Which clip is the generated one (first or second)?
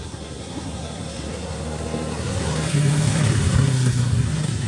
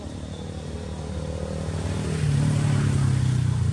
first